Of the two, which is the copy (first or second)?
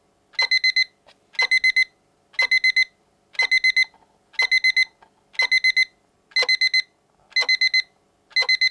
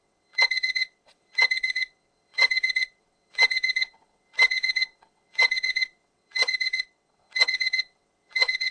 second